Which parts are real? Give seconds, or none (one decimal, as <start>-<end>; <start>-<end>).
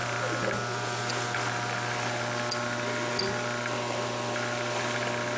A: 0.0-5.4